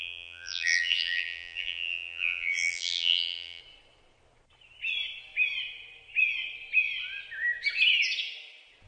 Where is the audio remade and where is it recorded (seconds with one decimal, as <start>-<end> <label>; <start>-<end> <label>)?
0.0-3.6 remade; 3.6-8.9 recorded